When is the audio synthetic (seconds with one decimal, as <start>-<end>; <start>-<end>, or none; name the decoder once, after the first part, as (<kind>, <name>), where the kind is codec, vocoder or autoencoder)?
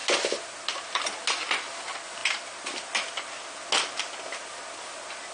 none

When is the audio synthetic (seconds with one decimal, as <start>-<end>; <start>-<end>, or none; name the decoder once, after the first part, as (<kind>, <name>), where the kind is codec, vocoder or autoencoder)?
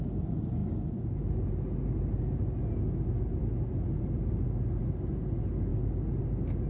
none